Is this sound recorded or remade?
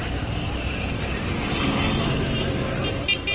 recorded